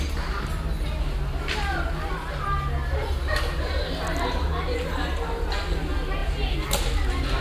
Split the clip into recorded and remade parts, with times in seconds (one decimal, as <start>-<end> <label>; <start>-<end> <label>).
0.0-7.4 recorded